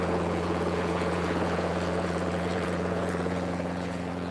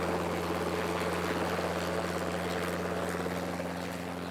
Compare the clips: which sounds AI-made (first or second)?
first